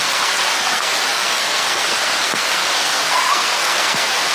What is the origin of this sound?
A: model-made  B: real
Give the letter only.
A